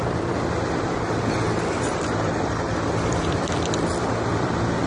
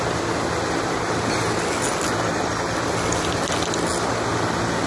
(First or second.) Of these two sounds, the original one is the second